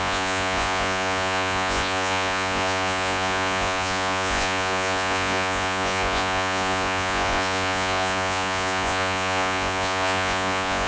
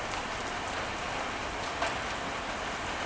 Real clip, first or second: second